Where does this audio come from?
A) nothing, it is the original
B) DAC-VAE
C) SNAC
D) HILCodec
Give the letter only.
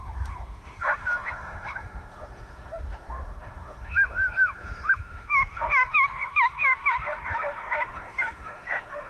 B